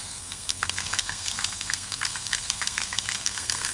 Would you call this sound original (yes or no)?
no